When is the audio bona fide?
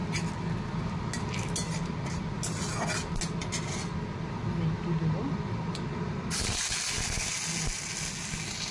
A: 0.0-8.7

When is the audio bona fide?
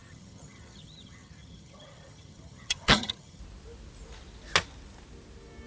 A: 3.4-5.7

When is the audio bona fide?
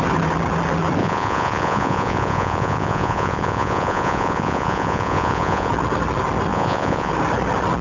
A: 0.0-1.0; 5.7-6.5; 7.1-7.8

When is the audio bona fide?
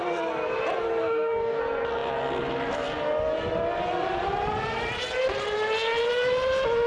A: 0.0-1.0; 1.6-6.9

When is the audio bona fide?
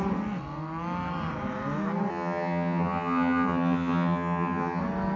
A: 0.0-2.1; 4.8-5.2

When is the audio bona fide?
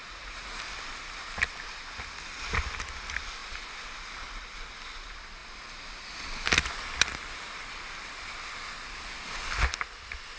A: 0.6-10.4